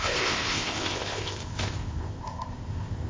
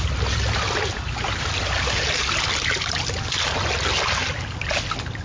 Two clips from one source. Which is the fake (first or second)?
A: first